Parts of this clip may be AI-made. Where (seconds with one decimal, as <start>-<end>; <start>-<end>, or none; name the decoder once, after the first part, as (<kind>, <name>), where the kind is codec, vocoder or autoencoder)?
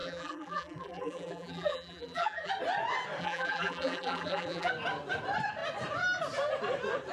0.0-2.5 (vocoder, BigVGAN v2); 3.2-4.7